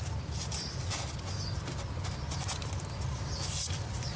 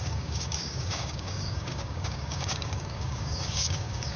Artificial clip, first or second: second